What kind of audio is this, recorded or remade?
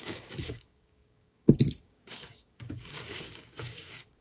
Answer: remade